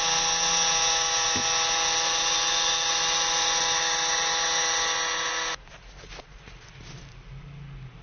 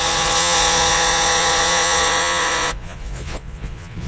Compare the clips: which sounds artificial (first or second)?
second